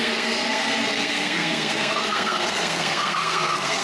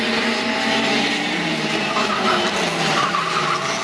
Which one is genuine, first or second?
second